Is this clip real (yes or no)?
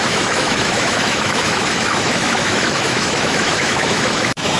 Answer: no